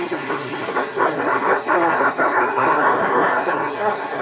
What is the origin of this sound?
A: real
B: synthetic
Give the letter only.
B